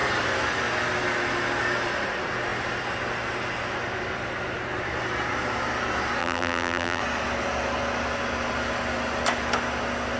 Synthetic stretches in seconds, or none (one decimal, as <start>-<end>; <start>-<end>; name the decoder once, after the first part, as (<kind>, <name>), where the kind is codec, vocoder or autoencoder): 6.2-7.0 (vocoder, BigVGAN v2)